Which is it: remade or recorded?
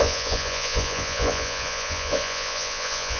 remade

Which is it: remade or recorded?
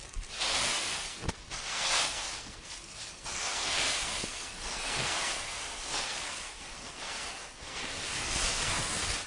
remade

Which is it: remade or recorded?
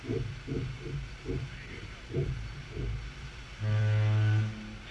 recorded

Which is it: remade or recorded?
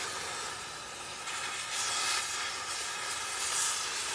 recorded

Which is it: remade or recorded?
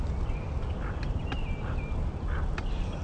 recorded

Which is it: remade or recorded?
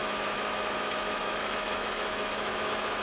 remade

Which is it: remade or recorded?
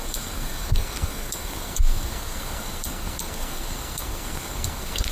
remade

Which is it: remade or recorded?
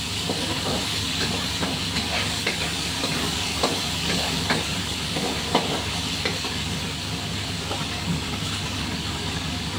remade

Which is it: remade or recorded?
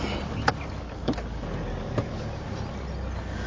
recorded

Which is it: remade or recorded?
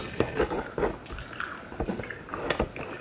recorded